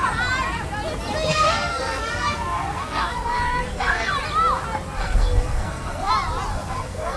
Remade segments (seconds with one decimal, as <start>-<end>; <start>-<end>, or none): 1.3-4.1; 5.0-6.1; 6.5-7.2